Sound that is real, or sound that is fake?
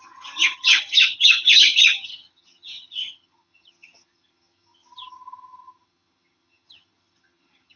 fake